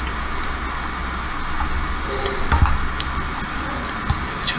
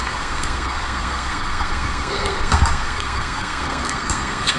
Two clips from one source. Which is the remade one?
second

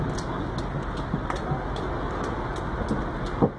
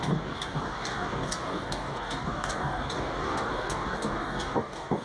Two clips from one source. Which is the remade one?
second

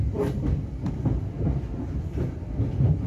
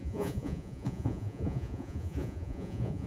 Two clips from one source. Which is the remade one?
second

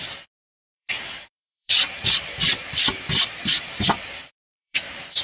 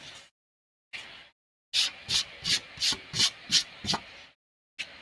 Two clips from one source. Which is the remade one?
first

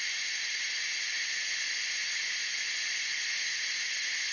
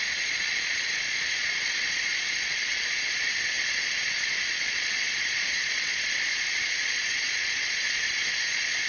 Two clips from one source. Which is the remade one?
second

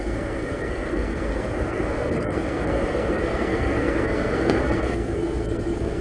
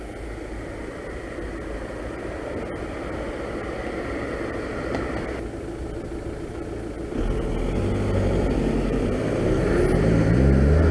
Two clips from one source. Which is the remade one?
first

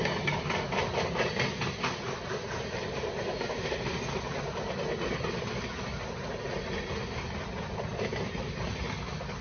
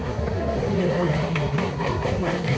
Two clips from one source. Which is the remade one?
second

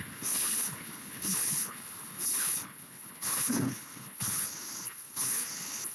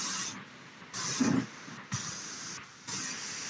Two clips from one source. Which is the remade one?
first